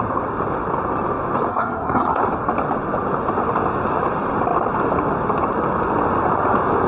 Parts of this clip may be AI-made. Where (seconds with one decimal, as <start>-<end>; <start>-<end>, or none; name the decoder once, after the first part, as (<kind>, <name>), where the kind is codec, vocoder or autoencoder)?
1.5-2.2 (codec, SNAC)